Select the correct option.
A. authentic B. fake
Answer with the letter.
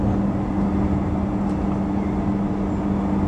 A